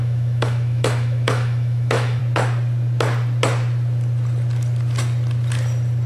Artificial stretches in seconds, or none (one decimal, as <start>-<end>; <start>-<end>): 0.0-2.2